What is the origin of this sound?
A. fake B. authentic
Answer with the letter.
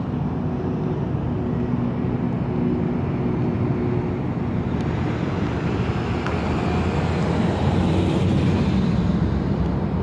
B